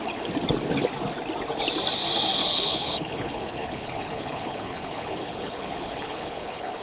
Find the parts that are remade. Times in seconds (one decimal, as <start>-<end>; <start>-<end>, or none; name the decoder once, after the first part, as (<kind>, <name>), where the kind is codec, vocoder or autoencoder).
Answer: 2.4-6.8 (codec, HILCodec)